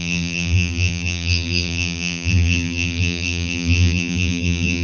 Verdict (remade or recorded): remade